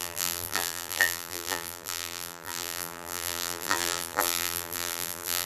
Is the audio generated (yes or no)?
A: yes